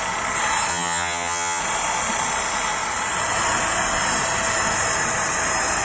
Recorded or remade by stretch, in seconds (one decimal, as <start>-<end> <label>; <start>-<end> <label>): 0.0-0.7 recorded; 0.7-1.6 remade; 1.6-5.8 recorded